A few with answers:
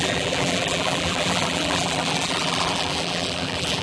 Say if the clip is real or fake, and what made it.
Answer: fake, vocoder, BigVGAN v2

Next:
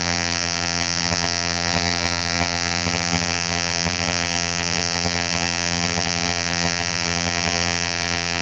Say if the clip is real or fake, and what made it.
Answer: fake, vocoder, BigVGAN v2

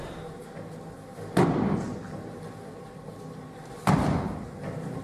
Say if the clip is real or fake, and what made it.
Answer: real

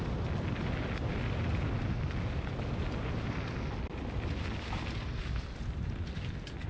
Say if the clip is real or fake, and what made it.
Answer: real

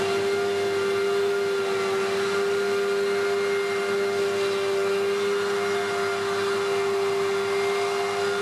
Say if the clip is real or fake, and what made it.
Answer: real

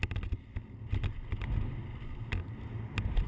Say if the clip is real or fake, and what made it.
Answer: real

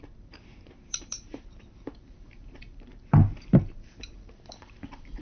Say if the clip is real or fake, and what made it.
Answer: fake, vocoder, BigVGAN v2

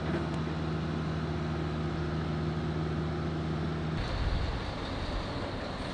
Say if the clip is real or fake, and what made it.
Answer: real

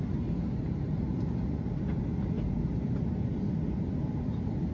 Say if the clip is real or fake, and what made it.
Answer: real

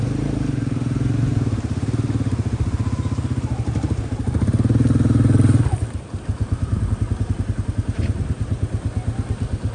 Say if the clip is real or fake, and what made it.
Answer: real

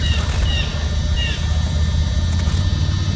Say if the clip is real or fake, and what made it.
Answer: real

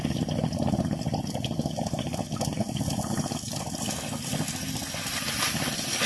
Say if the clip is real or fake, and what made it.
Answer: real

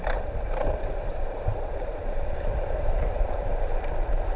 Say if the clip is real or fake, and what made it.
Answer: fake, vocoder, BigVGAN v2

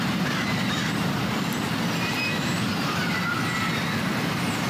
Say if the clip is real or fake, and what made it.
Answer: fake, vocoder, BigVGAN v2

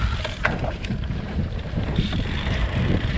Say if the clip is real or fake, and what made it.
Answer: fake, vocoder, BigVGAN v2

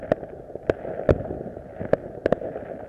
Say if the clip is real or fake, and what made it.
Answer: real